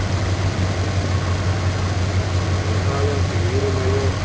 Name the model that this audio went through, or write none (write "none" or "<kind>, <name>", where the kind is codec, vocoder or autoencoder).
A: none